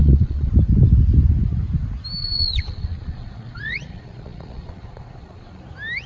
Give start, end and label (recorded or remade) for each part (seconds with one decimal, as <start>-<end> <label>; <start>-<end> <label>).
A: 0.0-0.5 remade; 0.5-2.2 recorded; 2.2-5.6 remade; 5.6-6.1 recorded